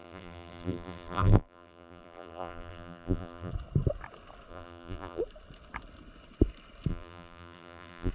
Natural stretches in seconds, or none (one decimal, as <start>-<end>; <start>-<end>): 3.5-4.5; 5.2-6.9